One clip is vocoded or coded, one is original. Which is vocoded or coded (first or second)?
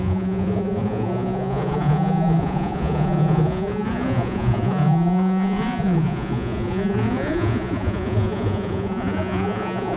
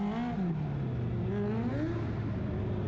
first